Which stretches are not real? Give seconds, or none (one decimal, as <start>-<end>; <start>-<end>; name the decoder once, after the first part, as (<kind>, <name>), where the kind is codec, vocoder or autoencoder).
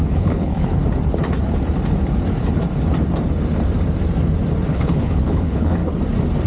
0.0-0.8 (codec, HILCodec); 4.7-5.8